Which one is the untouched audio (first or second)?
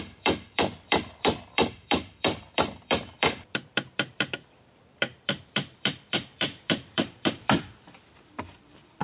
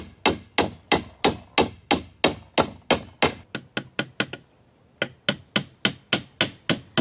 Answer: second